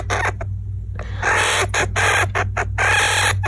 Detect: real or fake real